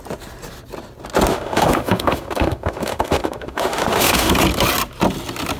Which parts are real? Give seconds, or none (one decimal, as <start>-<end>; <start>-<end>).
0.0-1.3; 4.3-5.6